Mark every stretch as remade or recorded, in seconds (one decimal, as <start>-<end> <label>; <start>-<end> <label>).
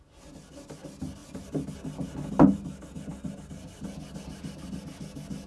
0.0-5.5 recorded